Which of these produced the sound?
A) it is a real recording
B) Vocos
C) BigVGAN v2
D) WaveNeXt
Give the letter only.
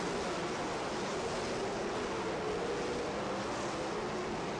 A